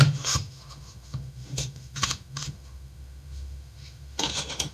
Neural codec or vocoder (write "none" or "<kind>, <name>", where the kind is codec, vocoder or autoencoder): autoencoder, DAC-VAE